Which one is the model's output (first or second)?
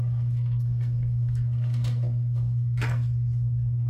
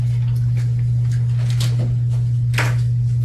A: first